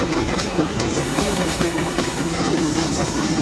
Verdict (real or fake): fake